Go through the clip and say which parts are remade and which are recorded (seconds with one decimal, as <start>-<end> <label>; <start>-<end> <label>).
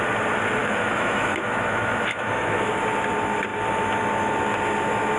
0.0-0.6 recorded; 0.6-2.7 remade; 2.7-5.2 recorded